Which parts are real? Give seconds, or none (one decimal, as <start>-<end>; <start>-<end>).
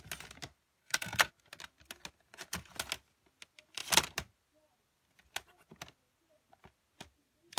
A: 0.0-0.8; 1.3-7.6